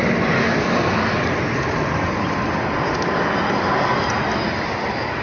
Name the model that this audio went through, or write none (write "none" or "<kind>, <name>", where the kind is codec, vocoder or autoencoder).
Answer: none